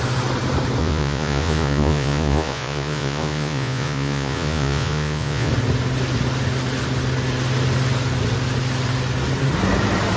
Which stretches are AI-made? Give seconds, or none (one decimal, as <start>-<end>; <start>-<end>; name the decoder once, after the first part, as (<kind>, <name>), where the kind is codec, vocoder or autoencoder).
0.8-5.5 (vocoder, Vocos)